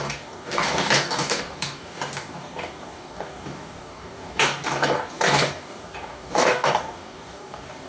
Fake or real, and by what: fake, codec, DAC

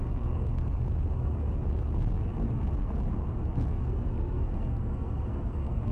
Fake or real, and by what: fake, codec, SNAC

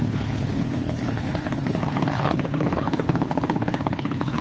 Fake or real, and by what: fake, codec, HILCodec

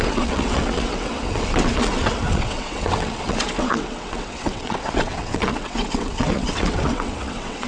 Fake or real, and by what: fake, vocoder, WaveNeXt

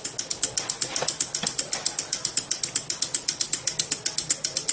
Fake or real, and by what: real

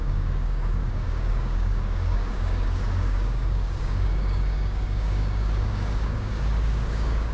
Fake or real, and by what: fake, codec, DAC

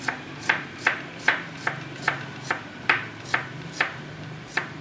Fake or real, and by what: fake, vocoder, BigVGAN v2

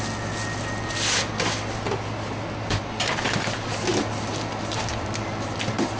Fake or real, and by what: real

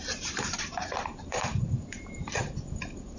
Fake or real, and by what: fake, vocoder, BigVGAN v2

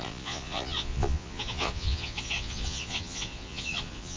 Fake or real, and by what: fake, vocoder, Vocos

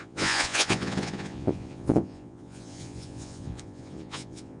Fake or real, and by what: fake, vocoder, Vocos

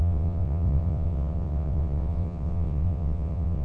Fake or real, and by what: fake, vocoder, WaveNeXt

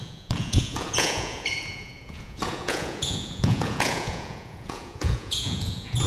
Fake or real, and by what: fake, vocoder, Vocos